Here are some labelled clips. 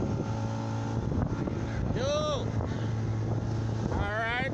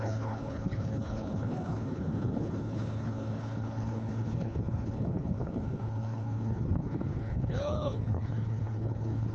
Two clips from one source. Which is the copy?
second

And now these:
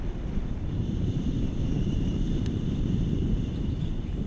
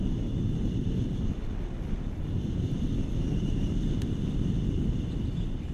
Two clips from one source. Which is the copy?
first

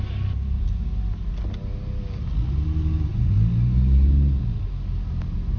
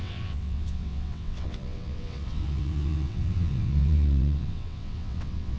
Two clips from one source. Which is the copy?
second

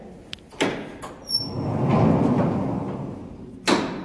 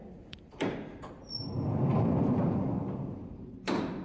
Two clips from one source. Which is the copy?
second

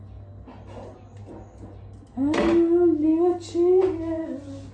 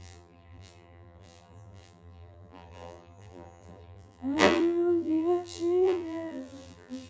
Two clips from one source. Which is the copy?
second